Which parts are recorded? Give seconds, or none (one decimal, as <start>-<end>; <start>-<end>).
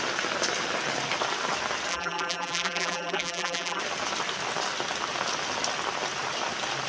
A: 0.0-1.9; 3.8-6.9